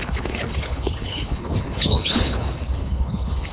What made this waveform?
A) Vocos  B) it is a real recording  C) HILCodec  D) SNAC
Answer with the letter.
C